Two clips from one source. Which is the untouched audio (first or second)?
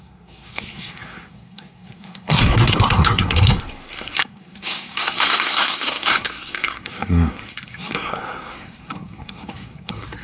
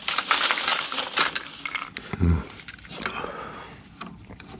second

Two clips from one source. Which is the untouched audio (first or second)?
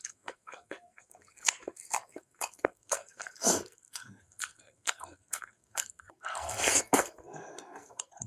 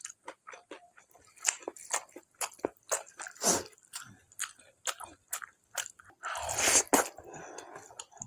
second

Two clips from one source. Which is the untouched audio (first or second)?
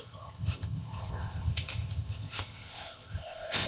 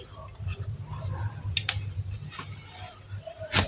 second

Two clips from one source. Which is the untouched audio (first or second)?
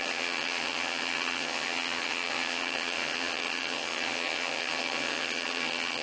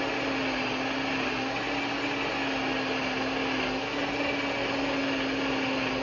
second